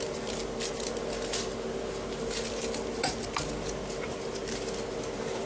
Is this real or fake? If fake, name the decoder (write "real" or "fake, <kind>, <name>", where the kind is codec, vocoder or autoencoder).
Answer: real